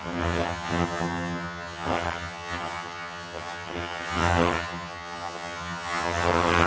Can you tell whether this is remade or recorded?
remade